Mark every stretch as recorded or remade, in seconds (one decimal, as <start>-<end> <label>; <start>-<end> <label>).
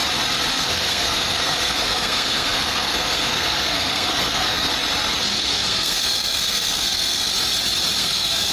0.0-0.5 recorded; 0.5-4.7 remade; 4.7-5.4 recorded; 5.4-7.3 remade; 7.3-8.0 recorded; 8.0-8.5 remade